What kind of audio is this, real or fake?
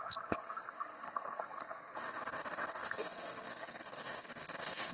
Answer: fake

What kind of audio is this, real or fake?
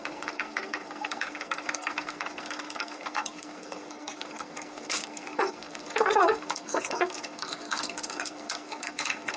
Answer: fake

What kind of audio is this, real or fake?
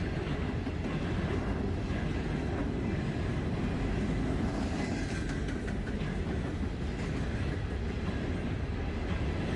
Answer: real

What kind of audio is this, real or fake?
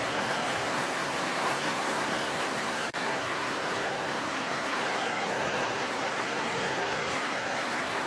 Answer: fake